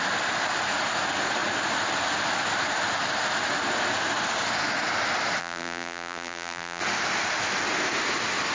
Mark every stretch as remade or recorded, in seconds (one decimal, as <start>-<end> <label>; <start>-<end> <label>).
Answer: 0.0-5.4 recorded; 5.4-6.8 remade; 6.8-8.5 recorded